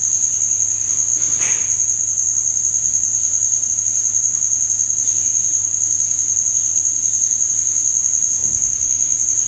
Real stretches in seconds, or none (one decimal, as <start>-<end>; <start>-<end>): 0.0-9.5